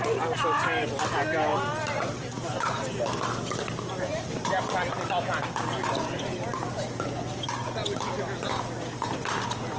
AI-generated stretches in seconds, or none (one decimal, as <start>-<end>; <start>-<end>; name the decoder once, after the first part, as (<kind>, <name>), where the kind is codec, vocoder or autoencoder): 1.5-2.8 (vocoder, BigVGAN v2); 4.1-4.7